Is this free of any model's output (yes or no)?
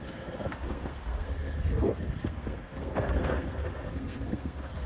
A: no